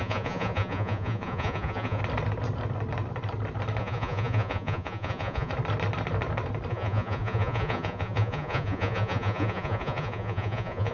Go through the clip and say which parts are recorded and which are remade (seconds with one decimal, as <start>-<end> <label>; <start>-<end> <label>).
0.0-2.0 remade; 2.0-3.8 recorded; 3.8-5.5 remade; 5.5-6.7 recorded; 6.7-10.9 remade